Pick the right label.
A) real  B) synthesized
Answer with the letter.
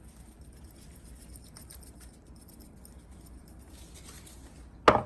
A